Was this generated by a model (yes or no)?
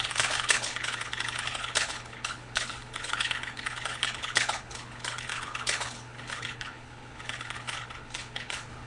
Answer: yes